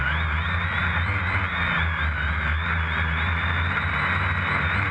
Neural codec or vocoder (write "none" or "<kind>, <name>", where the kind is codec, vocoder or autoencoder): none